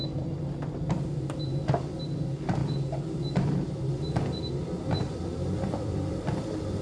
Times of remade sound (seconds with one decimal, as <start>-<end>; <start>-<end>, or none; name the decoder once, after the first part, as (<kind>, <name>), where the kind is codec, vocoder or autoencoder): 2.6-6.8 (vocoder, BigVGAN v2)